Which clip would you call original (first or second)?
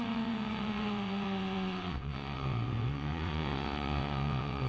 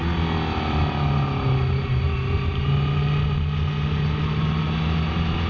second